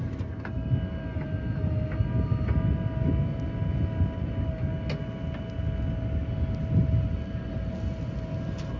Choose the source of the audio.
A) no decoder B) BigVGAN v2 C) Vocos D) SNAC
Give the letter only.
A